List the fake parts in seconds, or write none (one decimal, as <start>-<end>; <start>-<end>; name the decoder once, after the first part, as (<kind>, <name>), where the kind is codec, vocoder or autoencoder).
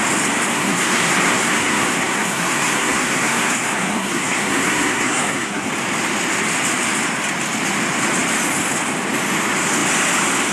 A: 0.5-5.7 (codec, SNAC)